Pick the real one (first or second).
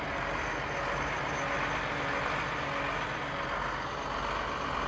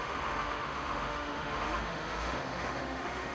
first